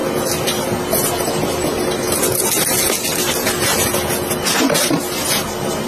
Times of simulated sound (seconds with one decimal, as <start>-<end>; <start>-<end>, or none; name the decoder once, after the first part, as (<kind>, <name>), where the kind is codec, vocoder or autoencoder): none

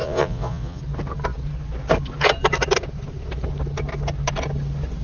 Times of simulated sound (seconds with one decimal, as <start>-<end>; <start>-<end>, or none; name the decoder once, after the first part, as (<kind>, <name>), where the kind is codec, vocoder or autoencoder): 0.0-0.8 (vocoder, Vocos)

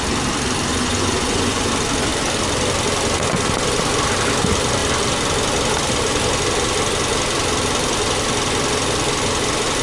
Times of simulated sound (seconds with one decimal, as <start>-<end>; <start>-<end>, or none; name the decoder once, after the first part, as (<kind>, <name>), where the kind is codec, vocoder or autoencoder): 0.7-1.7 (vocoder, Vocos)

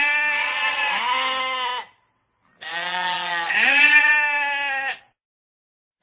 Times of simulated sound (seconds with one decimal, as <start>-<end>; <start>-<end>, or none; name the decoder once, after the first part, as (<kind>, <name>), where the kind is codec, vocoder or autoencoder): 0.4-0.9 (vocoder, Vocos); 2.7-4.1

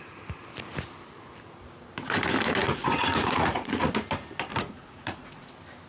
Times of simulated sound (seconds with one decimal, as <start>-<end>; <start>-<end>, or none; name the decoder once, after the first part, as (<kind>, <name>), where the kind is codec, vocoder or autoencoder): 2.6-3.9 (vocoder, Vocos); 4.5-5.5

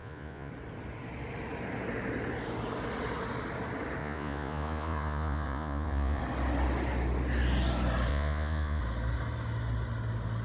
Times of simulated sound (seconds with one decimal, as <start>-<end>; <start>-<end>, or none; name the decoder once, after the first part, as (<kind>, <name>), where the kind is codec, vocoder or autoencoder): 0.0-0.5 (vocoder, Vocos); 4.0-6.2; 8.1-8.8

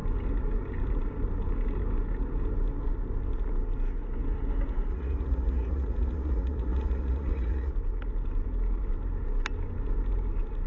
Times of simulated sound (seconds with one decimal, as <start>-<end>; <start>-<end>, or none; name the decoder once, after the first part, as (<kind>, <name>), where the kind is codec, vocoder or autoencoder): 4.9-7.7 (vocoder, Vocos)

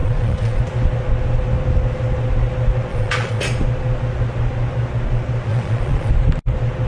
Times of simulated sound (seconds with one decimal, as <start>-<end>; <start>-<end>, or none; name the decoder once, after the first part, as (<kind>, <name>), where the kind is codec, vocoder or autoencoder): 0.0-0.6 (vocoder, Vocos); 2.9-3.4; 5.5-6.1